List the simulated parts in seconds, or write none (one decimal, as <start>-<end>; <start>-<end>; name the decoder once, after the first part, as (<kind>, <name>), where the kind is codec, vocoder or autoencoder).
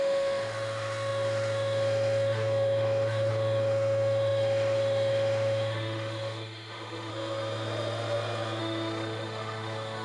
0.0-7.1 (autoencoder, DAC-VAE); 8.6-10.0